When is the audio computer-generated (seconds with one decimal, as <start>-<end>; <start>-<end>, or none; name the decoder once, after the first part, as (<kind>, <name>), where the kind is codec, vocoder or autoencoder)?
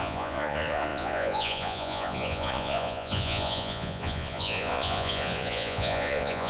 0.0-6.5 (vocoder, Vocos)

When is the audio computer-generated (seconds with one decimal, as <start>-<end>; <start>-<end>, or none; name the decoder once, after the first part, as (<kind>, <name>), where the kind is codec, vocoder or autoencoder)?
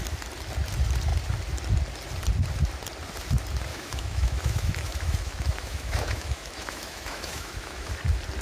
3.7-7.9 (autoencoder, DAC-VAE)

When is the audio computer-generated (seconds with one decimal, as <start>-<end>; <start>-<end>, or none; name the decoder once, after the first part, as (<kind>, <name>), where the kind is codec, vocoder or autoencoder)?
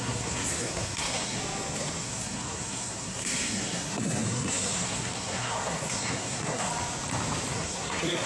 0.0-1.4 (codec, SNAC); 2.0-6.7; 7.5-8.3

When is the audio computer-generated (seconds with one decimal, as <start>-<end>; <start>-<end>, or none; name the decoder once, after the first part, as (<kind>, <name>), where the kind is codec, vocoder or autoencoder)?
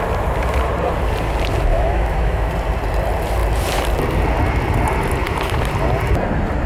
1.7-2.5 (autoencoder, DAC-VAE)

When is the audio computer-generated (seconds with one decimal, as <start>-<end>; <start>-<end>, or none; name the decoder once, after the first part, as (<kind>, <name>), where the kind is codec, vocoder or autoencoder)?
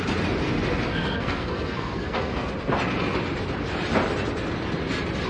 0.9-2.5 (codec, SNAC)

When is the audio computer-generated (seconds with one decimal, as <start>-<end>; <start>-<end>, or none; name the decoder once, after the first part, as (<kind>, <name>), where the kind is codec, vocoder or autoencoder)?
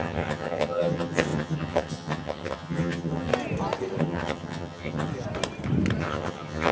0.0-3.3 (vocoder, HiFi-GAN); 4.0-5.1; 6.0-6.7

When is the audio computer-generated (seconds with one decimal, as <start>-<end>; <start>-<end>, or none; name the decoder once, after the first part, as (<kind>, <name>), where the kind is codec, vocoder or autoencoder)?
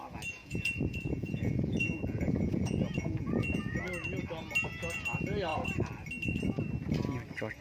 0.4-3.8 (vocoder, Vocos)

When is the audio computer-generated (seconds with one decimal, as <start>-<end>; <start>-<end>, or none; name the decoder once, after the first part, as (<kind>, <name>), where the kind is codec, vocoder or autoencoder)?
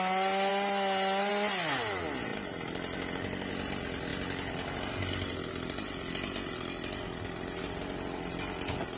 none